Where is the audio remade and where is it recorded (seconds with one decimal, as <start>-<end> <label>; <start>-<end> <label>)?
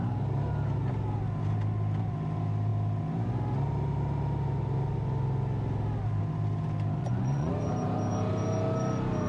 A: 0.0-7.0 recorded; 7.0-7.5 remade; 7.5-9.3 recorded